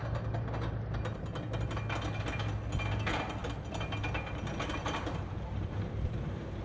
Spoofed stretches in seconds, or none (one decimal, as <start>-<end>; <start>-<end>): 4.8-6.6